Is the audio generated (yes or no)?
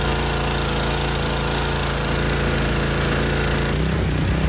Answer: no